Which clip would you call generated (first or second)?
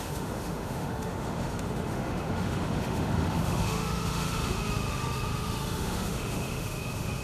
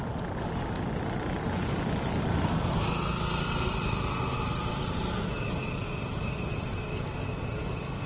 first